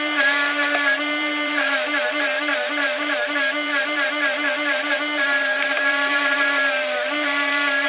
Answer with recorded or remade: remade